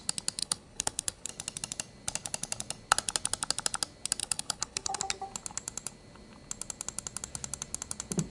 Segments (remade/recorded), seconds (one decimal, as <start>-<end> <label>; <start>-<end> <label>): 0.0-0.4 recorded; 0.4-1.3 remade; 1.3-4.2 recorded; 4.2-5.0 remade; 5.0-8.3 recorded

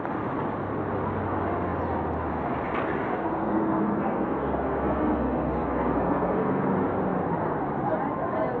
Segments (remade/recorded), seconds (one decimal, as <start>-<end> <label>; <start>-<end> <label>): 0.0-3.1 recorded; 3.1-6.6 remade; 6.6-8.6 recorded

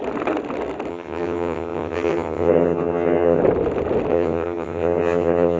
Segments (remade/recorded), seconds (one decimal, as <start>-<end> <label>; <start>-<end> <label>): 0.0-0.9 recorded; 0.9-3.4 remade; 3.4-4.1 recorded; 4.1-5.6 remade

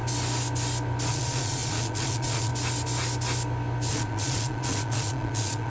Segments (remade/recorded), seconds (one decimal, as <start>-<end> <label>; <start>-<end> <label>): 0.0-1.1 recorded; 1.1-2.5 remade; 2.5-3.9 recorded; 3.9-5.7 remade